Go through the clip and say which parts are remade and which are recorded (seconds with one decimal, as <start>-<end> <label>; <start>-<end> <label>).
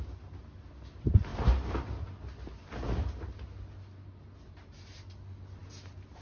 0.0-6.2 recorded